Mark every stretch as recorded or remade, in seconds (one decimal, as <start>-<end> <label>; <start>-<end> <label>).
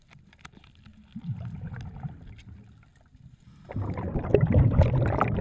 0.0-5.4 recorded